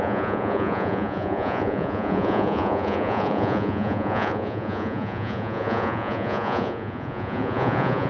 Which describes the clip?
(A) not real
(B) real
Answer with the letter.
A